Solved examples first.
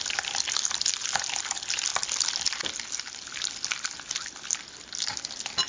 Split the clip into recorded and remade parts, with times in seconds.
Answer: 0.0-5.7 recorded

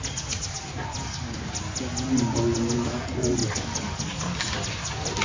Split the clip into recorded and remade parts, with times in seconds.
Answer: 0.0-3.4 recorded; 3.4-4.5 remade; 4.5-5.2 recorded

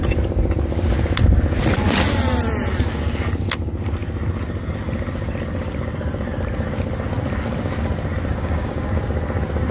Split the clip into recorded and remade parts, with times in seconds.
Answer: 0.0-8.3 recorded; 8.3-8.8 remade; 8.8-9.7 recorded

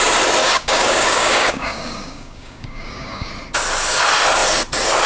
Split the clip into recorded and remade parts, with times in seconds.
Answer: 0.0-0.4 recorded; 0.4-3.3 remade; 3.3-5.1 recorded

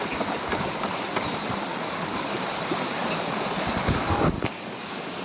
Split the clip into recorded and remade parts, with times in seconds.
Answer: 0.0-1.7 recorded; 1.7-2.4 remade; 2.4-3.0 recorded; 3.0-5.2 remade

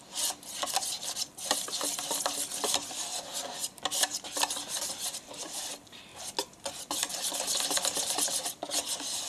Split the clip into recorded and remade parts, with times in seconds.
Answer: 0.0-9.3 recorded

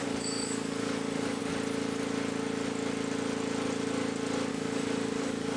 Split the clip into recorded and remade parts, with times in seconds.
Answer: 0.0-1.4 remade; 1.4-4.5 recorded; 4.5-5.6 remade

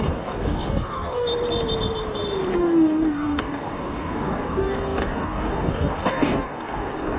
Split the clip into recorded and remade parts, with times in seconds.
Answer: 0.0-1.3 remade; 1.3-2.5 recorded; 2.5-7.2 remade